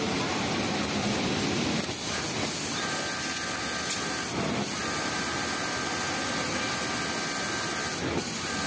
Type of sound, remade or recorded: recorded